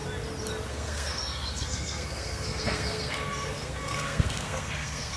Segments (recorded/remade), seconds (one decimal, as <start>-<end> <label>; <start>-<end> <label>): 0.0-0.7 recorded; 0.7-5.2 remade